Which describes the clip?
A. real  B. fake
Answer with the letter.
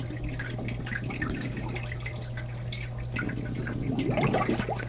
A